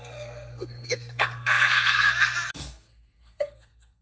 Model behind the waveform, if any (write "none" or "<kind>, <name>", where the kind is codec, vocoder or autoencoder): codec, SNAC